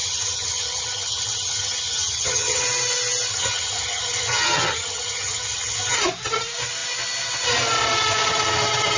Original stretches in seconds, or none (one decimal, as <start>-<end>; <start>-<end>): 2.6-3.3; 6.0-9.0